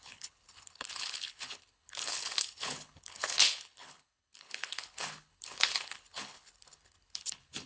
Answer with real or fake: fake